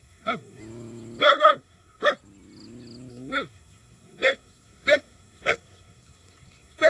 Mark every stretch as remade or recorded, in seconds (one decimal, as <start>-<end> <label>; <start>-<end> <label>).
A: 0.0-0.6 remade; 0.6-1.2 recorded; 1.2-2.0 remade; 2.0-3.1 recorded; 3.1-6.9 remade